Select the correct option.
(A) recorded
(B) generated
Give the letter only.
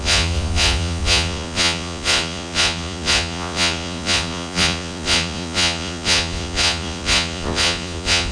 B